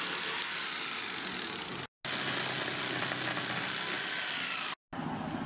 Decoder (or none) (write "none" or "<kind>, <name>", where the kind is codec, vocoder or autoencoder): none